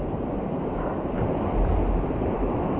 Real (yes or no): no